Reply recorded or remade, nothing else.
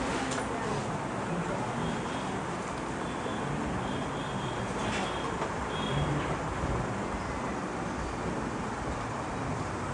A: recorded